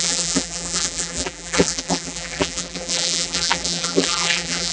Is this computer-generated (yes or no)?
yes